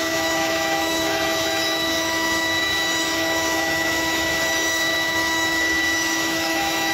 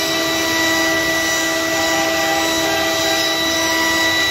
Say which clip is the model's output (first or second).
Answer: first